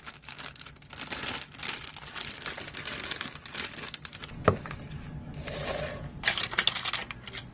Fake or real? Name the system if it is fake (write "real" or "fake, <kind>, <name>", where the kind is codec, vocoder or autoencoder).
real